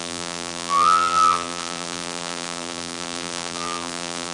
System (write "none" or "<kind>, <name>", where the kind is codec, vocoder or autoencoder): vocoder, BigVGAN v2